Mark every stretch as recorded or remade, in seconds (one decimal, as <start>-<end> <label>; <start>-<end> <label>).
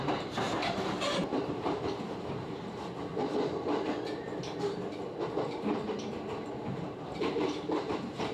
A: 0.0-3.1 remade; 3.1-6.9 recorded; 6.9-8.3 remade